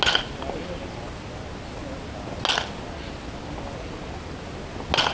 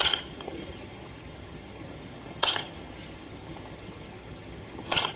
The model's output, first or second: second